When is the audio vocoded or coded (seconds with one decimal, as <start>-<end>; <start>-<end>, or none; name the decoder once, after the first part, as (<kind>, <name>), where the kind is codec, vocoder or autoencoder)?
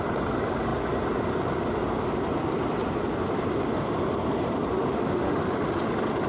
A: 4.7-5.3 (autoencoder, DAC-VAE)